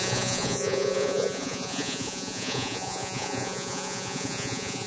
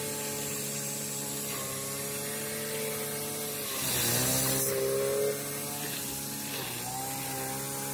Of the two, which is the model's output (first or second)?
first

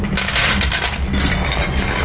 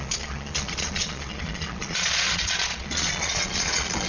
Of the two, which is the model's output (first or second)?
second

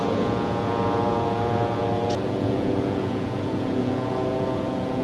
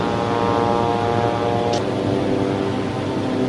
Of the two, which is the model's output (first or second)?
first